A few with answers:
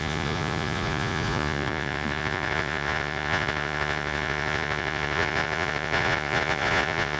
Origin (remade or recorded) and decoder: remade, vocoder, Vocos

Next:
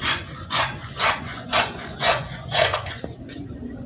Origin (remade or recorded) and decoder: remade, vocoder, Vocos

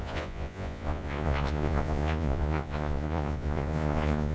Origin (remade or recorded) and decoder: remade, vocoder, Vocos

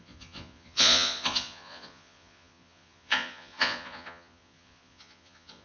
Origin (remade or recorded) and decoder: remade, vocoder, Vocos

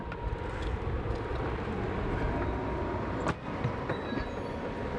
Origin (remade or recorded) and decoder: recorded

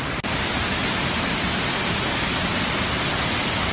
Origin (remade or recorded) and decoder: recorded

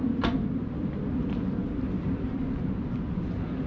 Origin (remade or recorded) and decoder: recorded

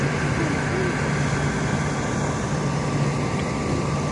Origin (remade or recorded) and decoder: recorded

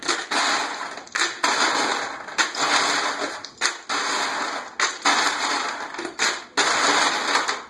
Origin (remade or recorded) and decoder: recorded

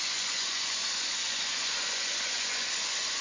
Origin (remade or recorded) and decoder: remade, vocoder, Vocos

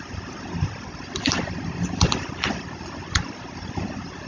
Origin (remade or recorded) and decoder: recorded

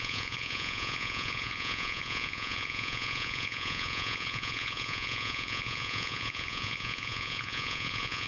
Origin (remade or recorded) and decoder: remade, vocoder, Vocos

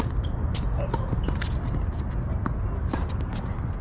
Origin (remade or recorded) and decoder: recorded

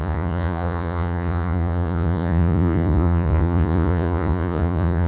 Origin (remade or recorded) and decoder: remade, vocoder, Vocos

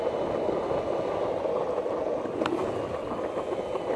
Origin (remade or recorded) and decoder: recorded